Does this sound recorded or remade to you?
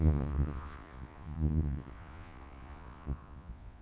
remade